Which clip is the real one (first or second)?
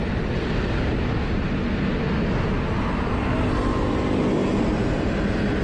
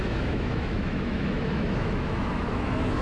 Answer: first